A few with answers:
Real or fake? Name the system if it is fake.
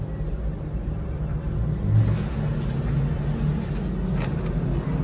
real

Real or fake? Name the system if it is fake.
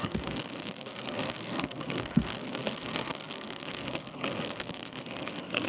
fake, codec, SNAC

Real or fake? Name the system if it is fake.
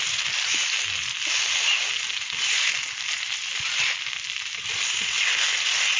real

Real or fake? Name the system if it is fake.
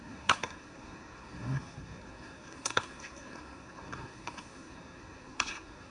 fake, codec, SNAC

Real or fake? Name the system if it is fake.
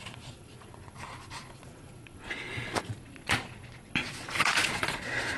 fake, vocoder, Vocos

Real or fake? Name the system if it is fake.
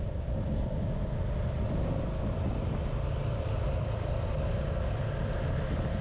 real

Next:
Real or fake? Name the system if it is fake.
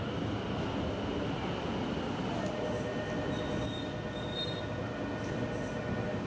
real